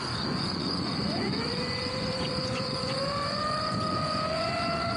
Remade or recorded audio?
remade